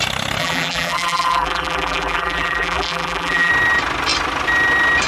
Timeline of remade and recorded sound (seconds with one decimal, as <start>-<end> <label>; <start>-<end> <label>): 0.0-0.4 recorded; 0.4-3.5 remade; 3.5-5.1 recorded